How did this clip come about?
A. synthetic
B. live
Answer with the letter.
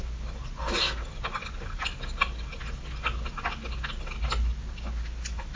B